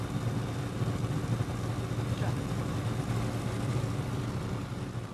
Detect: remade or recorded recorded